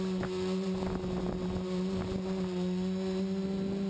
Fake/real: real